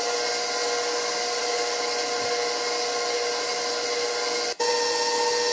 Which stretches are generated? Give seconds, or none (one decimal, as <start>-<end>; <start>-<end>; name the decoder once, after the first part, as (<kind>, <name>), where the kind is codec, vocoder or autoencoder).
none

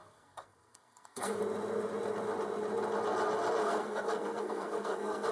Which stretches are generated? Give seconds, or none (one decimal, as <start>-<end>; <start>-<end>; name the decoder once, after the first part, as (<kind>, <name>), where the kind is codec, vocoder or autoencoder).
0.0-1.4 (codec, SNAC); 3.6-5.3

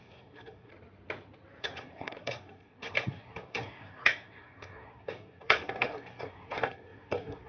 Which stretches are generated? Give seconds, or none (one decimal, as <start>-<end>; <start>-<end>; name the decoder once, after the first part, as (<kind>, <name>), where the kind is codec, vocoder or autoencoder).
0.0-0.7 (codec, SNAC); 1.6-7.5